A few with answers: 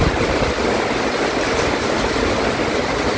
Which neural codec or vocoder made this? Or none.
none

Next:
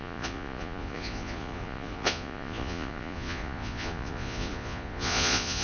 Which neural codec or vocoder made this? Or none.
vocoder, Vocos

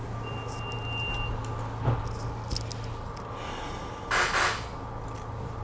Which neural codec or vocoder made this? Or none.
none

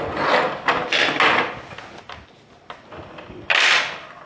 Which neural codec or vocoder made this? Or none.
none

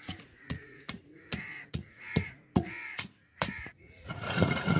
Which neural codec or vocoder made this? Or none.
vocoder, Vocos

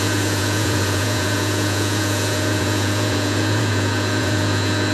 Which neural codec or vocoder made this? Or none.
vocoder, Vocos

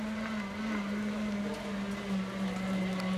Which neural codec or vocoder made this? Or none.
none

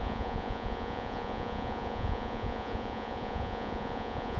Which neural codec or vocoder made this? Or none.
vocoder, Vocos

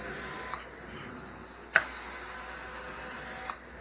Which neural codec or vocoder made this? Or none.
none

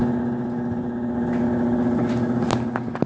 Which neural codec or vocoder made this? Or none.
none